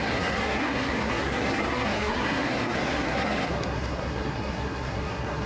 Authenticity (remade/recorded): remade